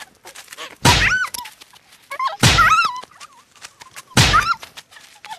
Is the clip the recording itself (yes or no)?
yes